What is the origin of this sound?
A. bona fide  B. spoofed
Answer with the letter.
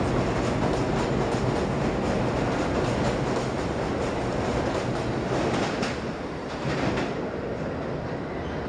A